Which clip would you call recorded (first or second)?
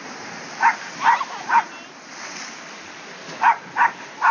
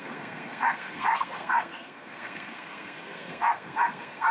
first